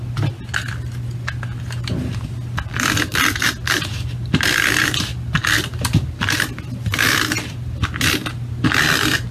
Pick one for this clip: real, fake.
real